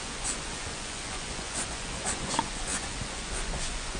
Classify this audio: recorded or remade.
remade